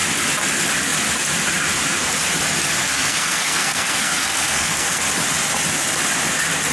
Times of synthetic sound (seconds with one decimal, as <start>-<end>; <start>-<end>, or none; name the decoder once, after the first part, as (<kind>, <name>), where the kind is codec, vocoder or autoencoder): 2.8-5.0 (codec, SNAC)